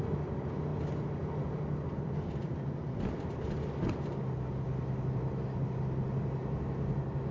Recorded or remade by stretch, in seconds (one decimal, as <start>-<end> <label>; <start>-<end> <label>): 0.0-7.3 recorded